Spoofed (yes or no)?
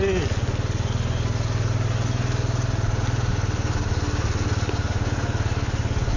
no